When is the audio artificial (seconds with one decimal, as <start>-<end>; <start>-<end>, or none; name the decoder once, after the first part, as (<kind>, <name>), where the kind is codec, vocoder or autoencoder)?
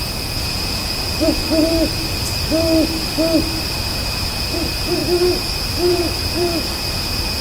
0.0-1.4 (vocoder, Vocos); 3.8-5.0; 5.9-7.4